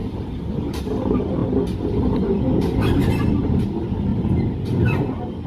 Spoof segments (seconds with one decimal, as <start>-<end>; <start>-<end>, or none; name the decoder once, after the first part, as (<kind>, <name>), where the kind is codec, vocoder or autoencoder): 0.0-0.8 (vocoder, BigVGAN v2); 4.1-5.0